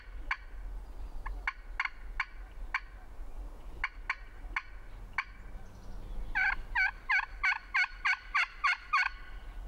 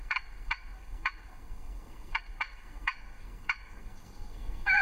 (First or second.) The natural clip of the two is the first